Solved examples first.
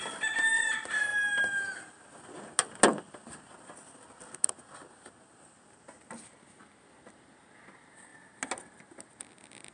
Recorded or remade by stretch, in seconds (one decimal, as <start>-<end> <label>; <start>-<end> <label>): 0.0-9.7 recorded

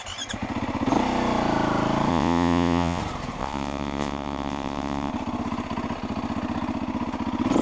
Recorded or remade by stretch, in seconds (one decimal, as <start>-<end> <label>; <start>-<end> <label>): 0.0-2.1 recorded; 2.1-3.0 remade; 3.0-3.4 recorded; 3.4-5.1 remade; 5.1-7.6 recorded

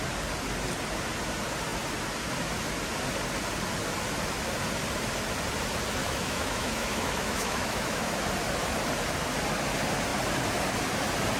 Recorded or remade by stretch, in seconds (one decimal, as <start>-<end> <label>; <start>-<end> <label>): 0.0-6.0 recorded; 6.0-8.1 remade; 8.1-11.4 recorded

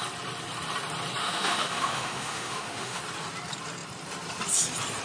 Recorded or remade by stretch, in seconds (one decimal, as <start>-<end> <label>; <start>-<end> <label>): 0.0-1.2 recorded; 1.2-3.0 remade; 3.0-5.0 recorded

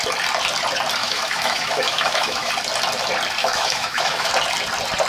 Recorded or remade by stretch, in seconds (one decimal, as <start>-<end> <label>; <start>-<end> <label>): 0.0-1.0 recorded; 1.0-2.5 remade; 2.5-3.4 recorded; 3.4-4.3 remade; 4.3-5.1 recorded

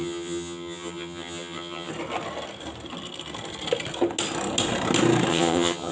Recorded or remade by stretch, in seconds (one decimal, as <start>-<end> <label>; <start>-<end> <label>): 0.0-1.9 remade; 1.9-5.3 recorded; 5.3-5.9 remade

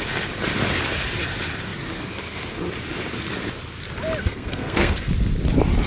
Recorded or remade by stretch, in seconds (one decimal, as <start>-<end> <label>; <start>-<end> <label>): 0.0-4.2 recorded; 4.2-5.1 remade; 5.1-5.9 recorded